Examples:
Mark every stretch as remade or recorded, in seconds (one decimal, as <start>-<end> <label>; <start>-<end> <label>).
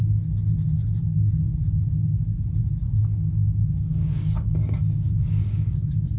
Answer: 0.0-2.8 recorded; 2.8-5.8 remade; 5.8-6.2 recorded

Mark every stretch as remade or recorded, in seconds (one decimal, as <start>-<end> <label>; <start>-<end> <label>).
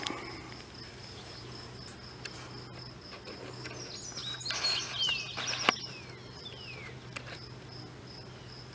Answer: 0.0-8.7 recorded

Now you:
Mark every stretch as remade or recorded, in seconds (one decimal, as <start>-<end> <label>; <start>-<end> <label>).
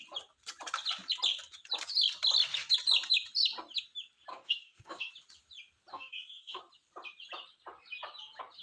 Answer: 0.0-4.3 recorded; 4.3-5.1 remade; 5.1-5.9 recorded; 5.9-6.6 remade; 6.6-8.6 recorded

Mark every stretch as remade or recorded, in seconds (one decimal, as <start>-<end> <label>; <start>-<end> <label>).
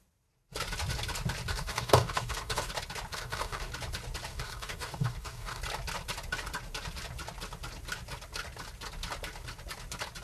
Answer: 0.0-1.5 recorded; 1.5-2.7 remade; 2.7-3.1 recorded; 3.1-3.7 remade; 3.7-4.3 recorded; 4.3-5.6 remade; 5.6-10.2 recorded